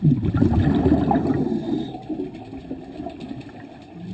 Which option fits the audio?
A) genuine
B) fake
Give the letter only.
A